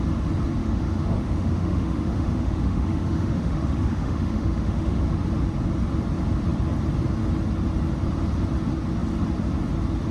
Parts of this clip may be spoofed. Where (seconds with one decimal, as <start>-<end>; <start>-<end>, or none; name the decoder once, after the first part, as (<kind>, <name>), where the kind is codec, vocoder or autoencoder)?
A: 0.6-5.0 (autoencoder, DAC-VAE)